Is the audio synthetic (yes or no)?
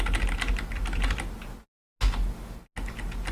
no